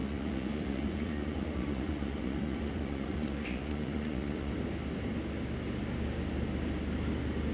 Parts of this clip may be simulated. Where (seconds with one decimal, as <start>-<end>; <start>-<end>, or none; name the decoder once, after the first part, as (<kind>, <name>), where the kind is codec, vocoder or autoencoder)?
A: 0.0-4.5 (vocoder, Vocos)